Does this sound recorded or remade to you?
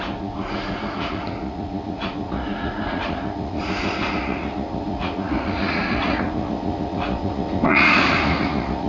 remade